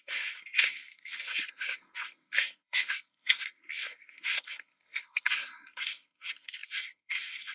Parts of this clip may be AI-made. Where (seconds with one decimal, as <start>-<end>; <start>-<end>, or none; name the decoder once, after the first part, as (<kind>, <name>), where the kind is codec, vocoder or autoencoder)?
0.0-7.5 (codec, SNAC)